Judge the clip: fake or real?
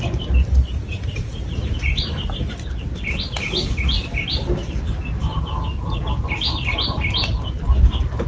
real